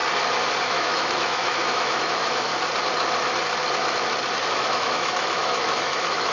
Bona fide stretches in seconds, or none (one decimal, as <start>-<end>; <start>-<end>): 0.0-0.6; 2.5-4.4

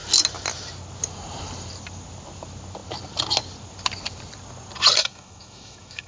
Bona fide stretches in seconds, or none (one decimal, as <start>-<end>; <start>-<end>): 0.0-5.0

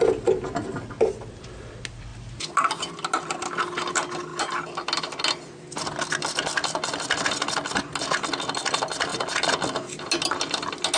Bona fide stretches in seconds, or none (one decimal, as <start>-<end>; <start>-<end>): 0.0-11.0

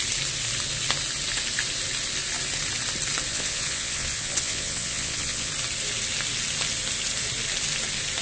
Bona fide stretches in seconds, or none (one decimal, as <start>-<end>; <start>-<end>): 0.0-3.3; 5.5-8.2

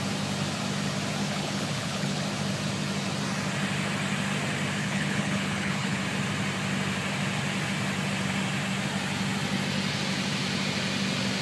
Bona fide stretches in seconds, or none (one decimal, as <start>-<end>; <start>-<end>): 0.0-1.2; 2.2-4.8; 6.0-11.4

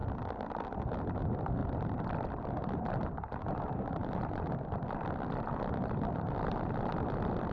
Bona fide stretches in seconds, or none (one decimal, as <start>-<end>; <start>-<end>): 0.0-1.6; 4.5-5.8; 6.9-7.5

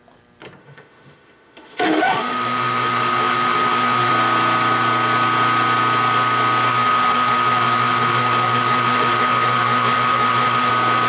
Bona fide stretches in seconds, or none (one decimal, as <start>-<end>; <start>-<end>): 0.0-0.6; 4.1-6.7; 10.7-11.1